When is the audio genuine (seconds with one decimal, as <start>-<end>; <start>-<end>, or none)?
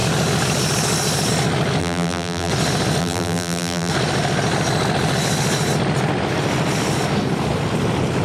0.0-1.8; 2.5-3.0; 3.9-8.2